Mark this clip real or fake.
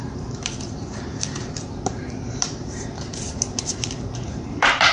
fake